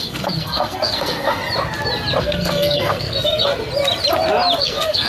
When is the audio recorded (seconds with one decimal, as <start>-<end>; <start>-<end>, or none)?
1.4-2.2; 3.5-4.6